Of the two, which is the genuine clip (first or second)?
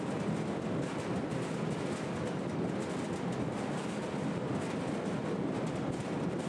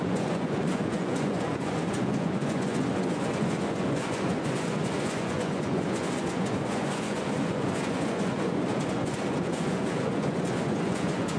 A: first